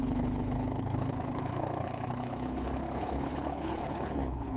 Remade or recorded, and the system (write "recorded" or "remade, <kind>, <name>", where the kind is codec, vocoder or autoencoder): remade, codec, HILCodec